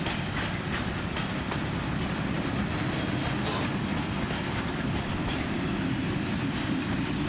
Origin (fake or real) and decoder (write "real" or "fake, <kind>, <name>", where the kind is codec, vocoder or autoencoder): real